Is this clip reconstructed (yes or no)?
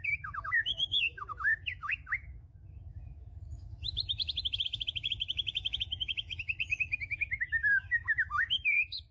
yes